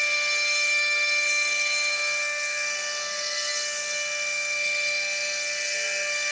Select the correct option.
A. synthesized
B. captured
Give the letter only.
A